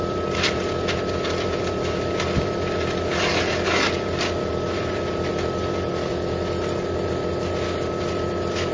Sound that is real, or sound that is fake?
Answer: real